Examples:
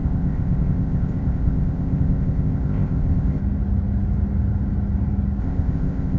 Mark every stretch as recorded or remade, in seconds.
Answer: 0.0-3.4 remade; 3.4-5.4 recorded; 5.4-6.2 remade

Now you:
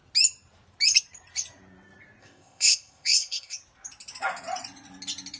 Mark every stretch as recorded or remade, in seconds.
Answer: 0.0-2.2 recorded; 2.2-3.6 remade; 3.6-5.4 recorded

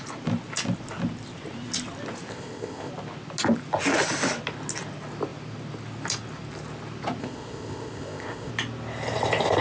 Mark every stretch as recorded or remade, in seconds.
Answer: 0.0-2.3 recorded; 2.3-2.9 remade; 2.9-7.2 recorded; 7.2-8.5 remade; 8.5-9.6 recorded

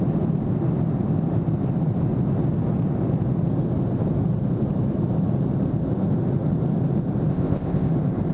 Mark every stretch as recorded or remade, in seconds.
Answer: 0.0-7.3 recorded; 7.3-7.9 remade; 7.9-8.3 recorded

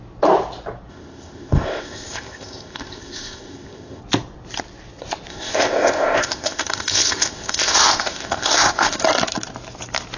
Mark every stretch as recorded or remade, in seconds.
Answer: 0.0-0.9 recorded; 0.9-4.0 remade; 4.0-5.3 recorded; 5.3-9.0 remade; 9.0-10.2 recorded

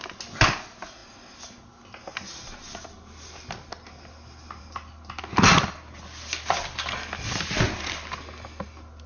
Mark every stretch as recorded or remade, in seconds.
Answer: 0.0-9.1 recorded

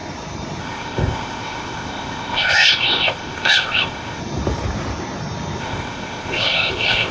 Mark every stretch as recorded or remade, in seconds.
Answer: 0.0-0.6 recorded; 0.6-4.2 remade; 4.2-5.6 recorded; 5.6-7.1 remade

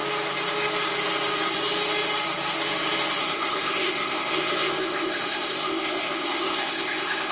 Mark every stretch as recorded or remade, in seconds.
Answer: 0.0-3.2 recorded; 3.2-7.3 remade